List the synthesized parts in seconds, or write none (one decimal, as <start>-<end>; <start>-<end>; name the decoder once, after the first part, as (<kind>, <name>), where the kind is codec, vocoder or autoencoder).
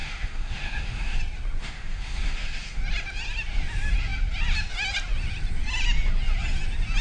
0.0-1.2 (autoencoder, DAC-VAE); 1.6-2.8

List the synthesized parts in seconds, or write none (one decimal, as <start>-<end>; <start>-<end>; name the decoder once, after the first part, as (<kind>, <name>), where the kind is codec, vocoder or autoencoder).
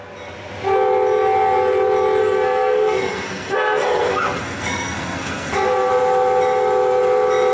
2.2-5.9 (codec, SNAC)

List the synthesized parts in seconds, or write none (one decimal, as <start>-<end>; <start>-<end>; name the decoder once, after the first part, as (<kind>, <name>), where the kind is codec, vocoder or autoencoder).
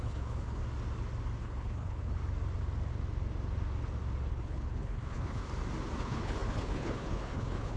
0.0-0.6 (codec, HILCodec); 1.4-2.2; 4.3-5.4; 6.0-7.8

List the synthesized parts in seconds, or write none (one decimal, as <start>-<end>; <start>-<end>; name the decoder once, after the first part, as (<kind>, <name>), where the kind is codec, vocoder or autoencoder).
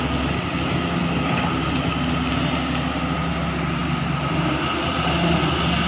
none